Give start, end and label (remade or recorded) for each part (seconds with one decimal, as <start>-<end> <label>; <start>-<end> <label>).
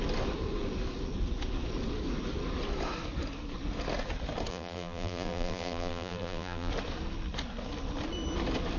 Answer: 0.0-4.5 recorded; 4.5-6.7 remade; 6.7-8.8 recorded